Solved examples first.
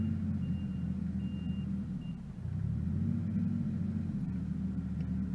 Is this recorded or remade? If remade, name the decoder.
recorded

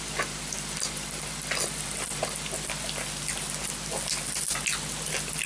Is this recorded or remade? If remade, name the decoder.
recorded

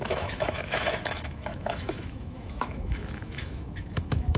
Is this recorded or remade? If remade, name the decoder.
remade, autoencoder, DAC-VAE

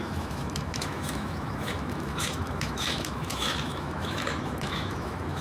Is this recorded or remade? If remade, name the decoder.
remade, autoencoder, DAC-VAE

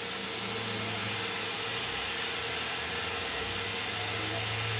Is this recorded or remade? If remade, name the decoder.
recorded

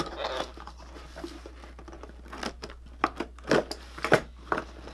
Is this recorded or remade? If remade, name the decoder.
recorded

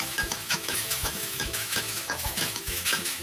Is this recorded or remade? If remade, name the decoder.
remade, autoencoder, DAC-VAE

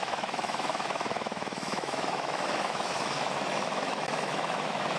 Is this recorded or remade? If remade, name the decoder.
remade, autoencoder, DAC-VAE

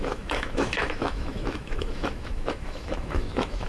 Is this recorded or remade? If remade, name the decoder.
remade, autoencoder, DAC-VAE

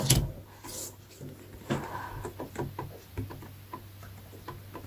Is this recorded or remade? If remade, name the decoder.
recorded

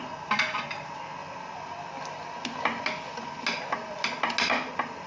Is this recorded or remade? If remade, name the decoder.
recorded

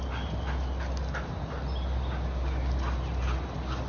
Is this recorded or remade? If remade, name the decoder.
recorded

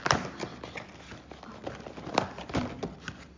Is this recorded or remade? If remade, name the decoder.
recorded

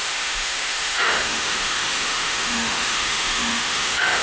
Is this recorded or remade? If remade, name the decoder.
remade, autoencoder, DAC-VAE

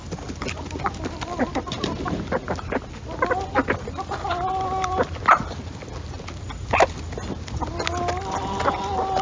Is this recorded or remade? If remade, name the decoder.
recorded